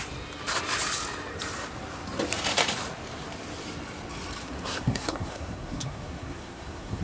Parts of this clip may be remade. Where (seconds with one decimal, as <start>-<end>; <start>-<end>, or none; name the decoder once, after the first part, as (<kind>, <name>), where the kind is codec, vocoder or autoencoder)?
4.4-7.0 (codec, SNAC)